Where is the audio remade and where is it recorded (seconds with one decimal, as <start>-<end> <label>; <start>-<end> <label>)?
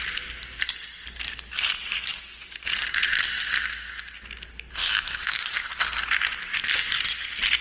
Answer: 0.0-4.8 recorded; 4.8-5.4 remade; 5.4-7.6 recorded